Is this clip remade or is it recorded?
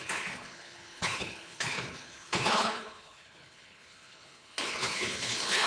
remade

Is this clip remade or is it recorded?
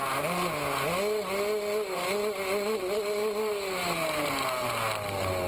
recorded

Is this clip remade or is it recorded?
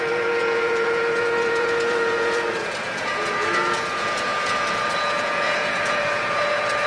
remade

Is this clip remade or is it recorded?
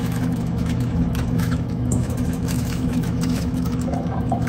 remade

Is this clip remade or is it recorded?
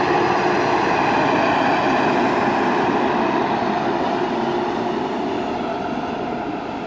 recorded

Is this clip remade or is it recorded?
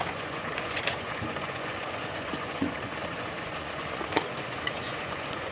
remade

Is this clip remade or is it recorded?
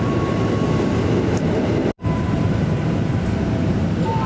remade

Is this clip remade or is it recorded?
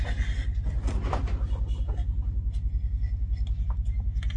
recorded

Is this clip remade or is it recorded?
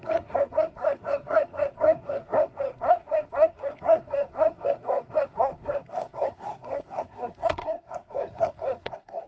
remade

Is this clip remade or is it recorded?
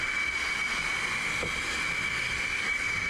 recorded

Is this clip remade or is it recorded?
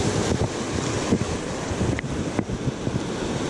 recorded